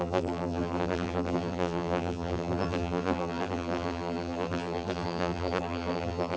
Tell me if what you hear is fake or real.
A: fake